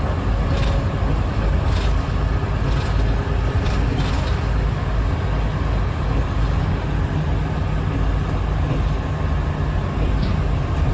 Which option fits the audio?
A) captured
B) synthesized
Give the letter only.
A